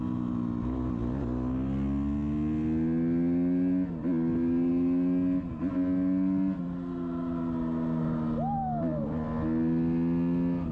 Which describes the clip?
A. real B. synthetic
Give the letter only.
A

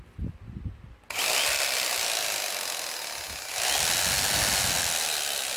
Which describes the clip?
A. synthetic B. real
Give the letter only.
B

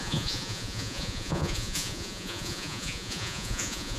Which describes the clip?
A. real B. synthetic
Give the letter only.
B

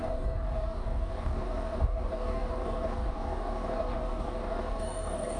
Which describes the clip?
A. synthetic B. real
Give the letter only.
A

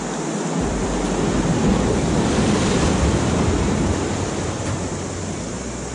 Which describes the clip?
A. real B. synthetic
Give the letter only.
A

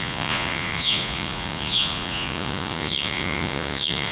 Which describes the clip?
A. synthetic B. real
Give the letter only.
A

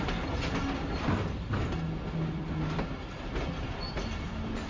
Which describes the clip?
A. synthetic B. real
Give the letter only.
B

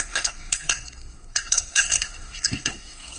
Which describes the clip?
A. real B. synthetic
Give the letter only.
B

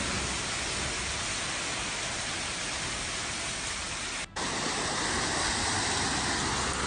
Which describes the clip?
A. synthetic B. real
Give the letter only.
B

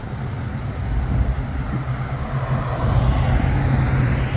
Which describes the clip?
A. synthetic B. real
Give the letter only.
B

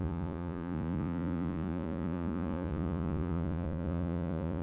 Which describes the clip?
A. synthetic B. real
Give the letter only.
A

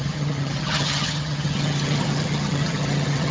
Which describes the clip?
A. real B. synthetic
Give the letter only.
B